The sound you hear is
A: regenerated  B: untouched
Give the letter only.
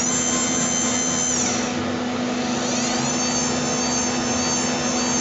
B